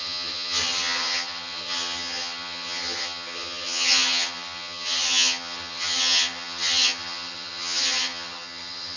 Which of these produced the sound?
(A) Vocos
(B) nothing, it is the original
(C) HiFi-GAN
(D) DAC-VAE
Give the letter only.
C